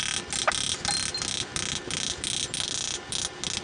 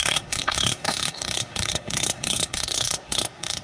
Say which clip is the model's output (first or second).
second